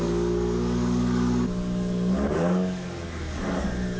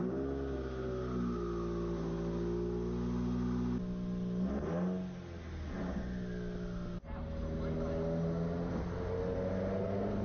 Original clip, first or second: second